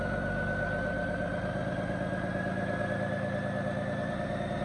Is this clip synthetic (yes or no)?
no